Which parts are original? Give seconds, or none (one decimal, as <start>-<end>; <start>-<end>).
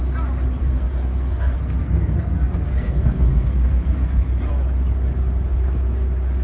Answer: 0.0-0.6; 4.4-6.4